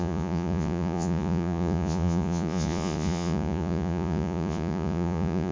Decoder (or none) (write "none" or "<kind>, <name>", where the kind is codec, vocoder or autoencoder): vocoder, Vocos